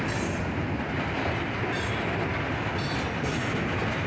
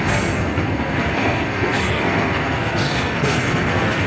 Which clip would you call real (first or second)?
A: first